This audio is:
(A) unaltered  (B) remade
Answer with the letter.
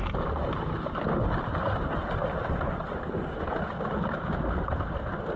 A